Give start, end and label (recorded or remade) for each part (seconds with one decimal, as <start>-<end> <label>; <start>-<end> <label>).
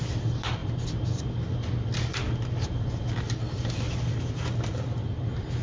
0.0-5.6 recorded